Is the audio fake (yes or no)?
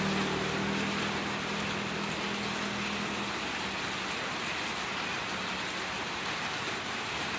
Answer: no